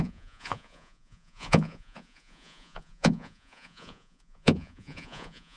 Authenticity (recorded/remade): remade